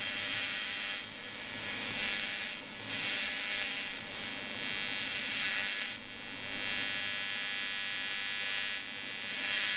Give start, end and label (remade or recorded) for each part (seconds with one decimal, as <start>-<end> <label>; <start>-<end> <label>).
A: 0.0-4.3 remade; 4.3-5.0 recorded; 5.0-6.0 remade; 6.0-9.3 recorded; 9.3-9.8 remade